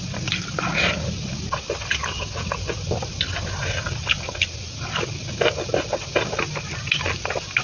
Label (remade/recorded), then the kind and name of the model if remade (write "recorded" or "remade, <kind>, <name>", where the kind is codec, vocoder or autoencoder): recorded